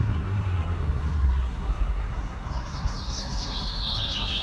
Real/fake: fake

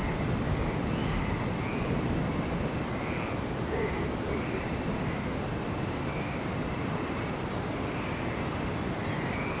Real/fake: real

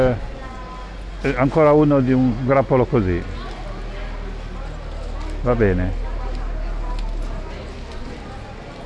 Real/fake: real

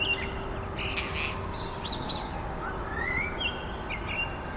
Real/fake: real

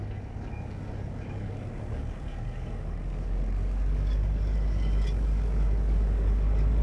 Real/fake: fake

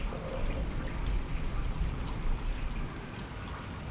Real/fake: real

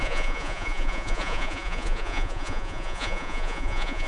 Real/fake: fake